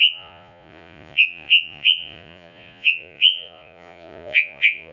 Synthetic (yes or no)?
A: yes